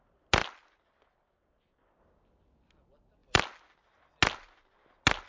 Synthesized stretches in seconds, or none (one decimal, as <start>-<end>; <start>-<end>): 0.4-2.0; 3.2-4.1